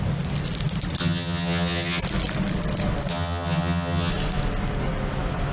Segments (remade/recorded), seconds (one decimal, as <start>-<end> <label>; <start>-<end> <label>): 0.0-1.0 recorded; 1.0-2.0 remade; 2.0-3.1 recorded; 3.1-4.1 remade; 4.1-5.5 recorded